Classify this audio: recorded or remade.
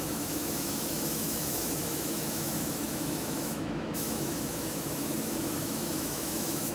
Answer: remade